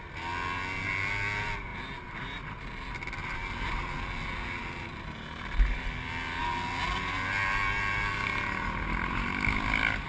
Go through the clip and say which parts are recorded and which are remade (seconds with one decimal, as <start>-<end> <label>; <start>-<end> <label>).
0.0-10.1 recorded